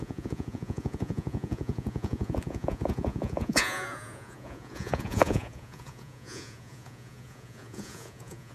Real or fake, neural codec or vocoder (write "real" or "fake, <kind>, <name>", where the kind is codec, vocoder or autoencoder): fake, vocoder, Vocos